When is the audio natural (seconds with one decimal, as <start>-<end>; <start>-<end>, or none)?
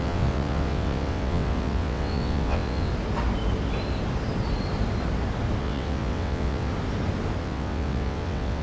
2.9-5.6; 6.7-7.4